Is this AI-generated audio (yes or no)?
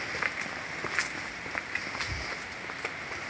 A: no